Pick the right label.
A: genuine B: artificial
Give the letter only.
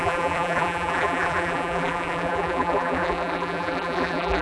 B